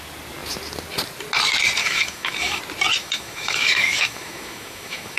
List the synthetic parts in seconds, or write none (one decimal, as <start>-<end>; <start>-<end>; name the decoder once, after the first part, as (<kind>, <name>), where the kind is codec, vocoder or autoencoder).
1.8-2.6 (autoencoder, DAC-VAE); 3.0-5.2